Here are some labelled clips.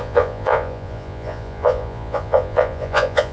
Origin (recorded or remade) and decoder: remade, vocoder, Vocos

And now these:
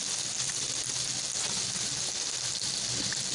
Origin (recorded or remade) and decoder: recorded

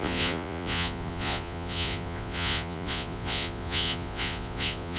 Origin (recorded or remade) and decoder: remade, vocoder, Vocos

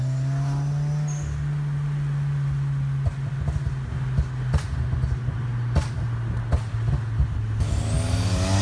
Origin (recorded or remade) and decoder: recorded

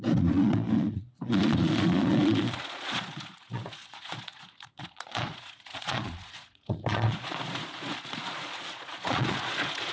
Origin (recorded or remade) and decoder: remade, vocoder, Vocos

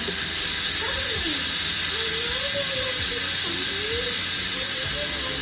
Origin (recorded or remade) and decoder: recorded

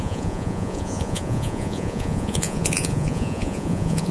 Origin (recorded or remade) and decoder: remade, vocoder, Vocos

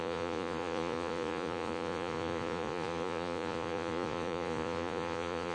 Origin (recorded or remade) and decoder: remade, vocoder, Vocos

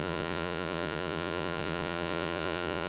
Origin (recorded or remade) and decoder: remade, vocoder, Vocos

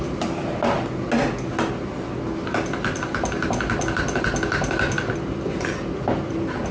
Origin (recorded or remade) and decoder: recorded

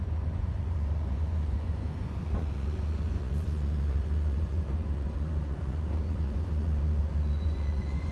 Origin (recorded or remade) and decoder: remade, vocoder, Vocos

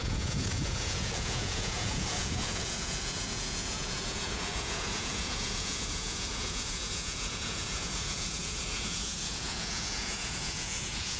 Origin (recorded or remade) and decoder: remade, vocoder, Vocos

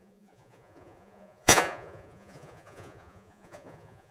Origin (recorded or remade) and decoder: remade, vocoder, Vocos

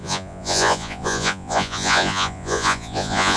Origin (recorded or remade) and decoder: remade, vocoder, Vocos